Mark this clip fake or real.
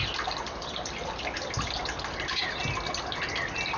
real